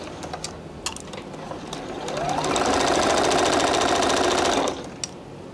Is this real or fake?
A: real